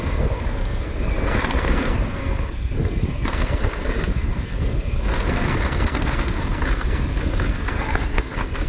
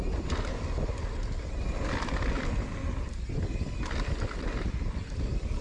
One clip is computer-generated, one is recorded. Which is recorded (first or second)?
second